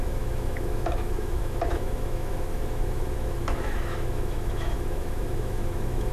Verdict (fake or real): fake